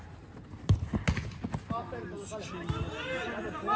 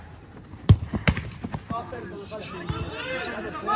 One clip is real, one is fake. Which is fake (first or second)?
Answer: second